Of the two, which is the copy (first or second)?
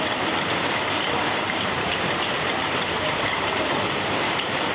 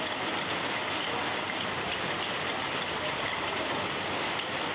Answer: first